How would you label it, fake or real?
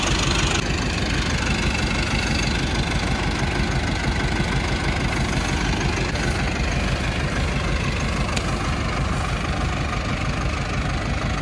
real